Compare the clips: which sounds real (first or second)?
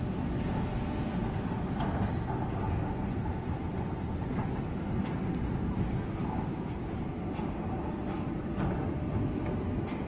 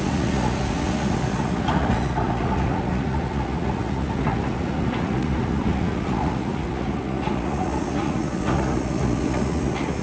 first